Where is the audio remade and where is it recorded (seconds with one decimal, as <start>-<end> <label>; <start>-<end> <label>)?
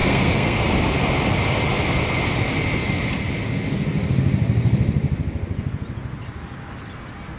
0.0-0.6 remade; 0.6-7.4 recorded